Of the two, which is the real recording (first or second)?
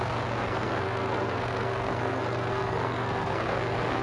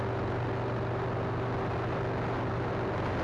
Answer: second